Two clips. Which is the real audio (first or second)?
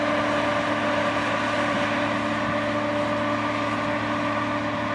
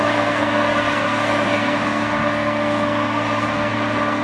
first